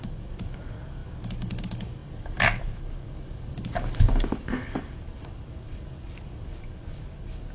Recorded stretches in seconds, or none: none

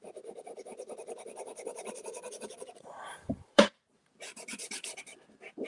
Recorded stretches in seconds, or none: 0.0-0.7; 4.0-5.7

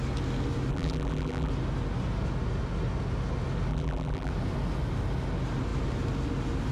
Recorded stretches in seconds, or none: 0.0-0.7; 1.5-3.7; 4.3-6.7

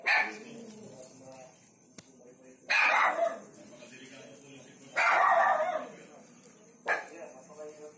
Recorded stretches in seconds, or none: 0.0-8.0

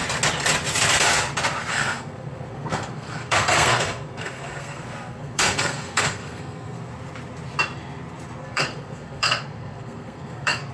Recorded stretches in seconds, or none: 0.0-1.7; 6.9-8.4

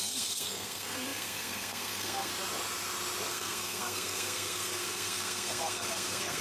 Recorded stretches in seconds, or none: 2.3-3.3

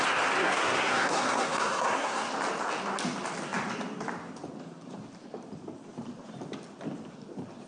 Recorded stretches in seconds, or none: 0.0-0.4; 2.3-7.7

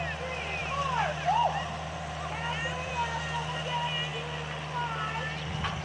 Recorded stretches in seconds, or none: 0.0-0.6; 2.9-5.8